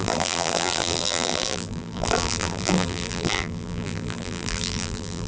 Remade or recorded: remade